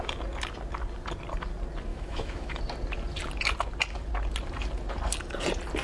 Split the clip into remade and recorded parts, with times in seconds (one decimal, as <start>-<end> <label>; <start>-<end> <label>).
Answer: 0.0-1.9 recorded; 1.9-2.6 remade; 2.6-5.8 recorded